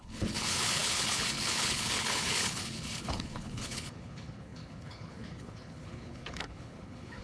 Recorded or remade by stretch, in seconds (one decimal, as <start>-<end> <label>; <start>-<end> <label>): 0.0-7.2 remade